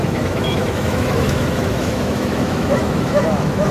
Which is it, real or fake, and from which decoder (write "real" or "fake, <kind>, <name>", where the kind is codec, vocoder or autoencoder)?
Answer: fake, autoencoder, DAC-VAE